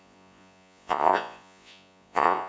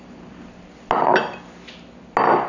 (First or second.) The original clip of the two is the second